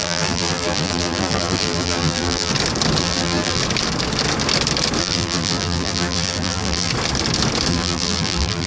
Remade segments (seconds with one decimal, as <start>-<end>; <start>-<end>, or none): 0.0-2.5; 3.0-3.6; 5.0-6.9; 7.7-8.7